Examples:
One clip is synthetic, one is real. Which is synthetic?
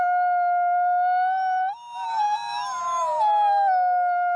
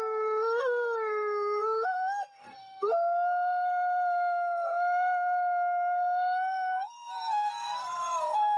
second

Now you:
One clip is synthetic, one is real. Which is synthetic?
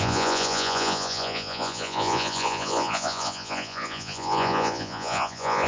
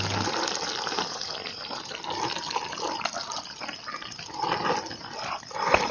first